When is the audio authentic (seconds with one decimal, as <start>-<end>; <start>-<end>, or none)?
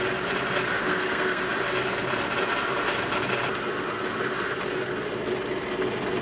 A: 0.0-0.8; 1.4-6.2